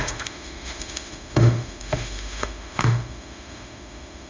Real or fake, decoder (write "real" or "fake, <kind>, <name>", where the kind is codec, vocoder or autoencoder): fake, autoencoder, DAC-VAE